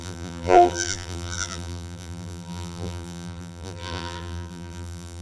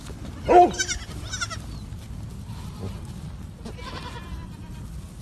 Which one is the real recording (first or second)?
second